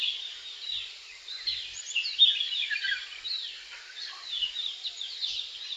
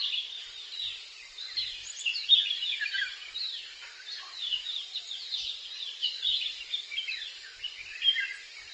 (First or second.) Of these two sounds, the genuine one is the first